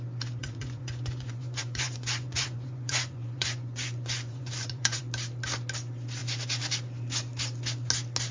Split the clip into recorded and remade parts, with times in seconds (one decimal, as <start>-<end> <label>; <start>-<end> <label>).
0.0-0.4 recorded; 0.4-5.0 remade; 5.0-8.3 recorded